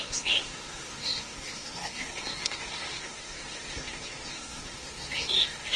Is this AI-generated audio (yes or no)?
yes